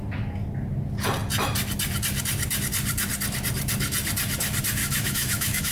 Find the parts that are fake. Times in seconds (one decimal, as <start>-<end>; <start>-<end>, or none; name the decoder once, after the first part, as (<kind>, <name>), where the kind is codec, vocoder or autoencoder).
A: 4.8-5.7 (autoencoder, DAC-VAE)